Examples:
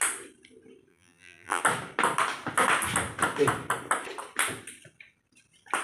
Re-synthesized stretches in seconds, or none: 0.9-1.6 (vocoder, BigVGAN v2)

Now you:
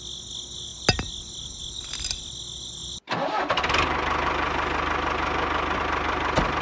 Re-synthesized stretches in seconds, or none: 2.8-3.5 (vocoder, BigVGAN v2)

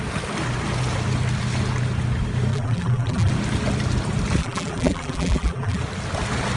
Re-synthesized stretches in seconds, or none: 2.5-3.3 (vocoder, BigVGAN v2); 4.4-5.8